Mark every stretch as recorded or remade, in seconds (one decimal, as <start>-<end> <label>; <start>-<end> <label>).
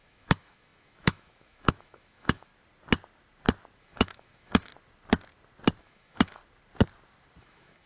0.0-2.5 remade; 2.5-3.8 recorded; 3.8-4.7 remade; 4.7-5.8 recorded; 5.8-6.4 remade; 6.4-7.4 recorded; 7.4-7.9 remade